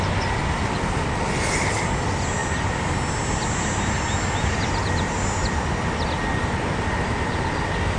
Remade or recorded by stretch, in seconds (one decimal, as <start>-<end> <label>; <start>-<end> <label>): 0.0-8.0 recorded